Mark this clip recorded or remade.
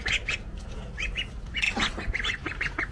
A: recorded